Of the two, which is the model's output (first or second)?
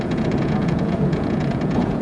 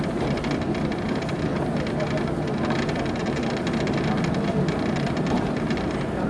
first